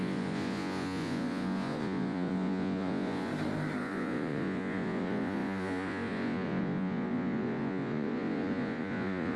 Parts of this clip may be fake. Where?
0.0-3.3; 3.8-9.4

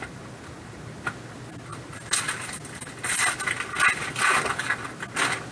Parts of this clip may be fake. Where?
none

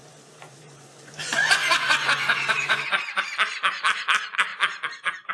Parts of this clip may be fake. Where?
0.0-3.2

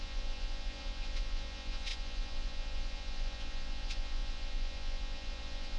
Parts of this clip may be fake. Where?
0.0-5.8

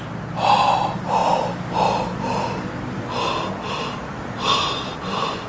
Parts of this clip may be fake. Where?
4.6-5.5

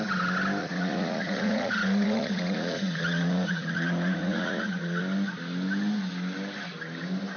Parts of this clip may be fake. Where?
0.6-5.0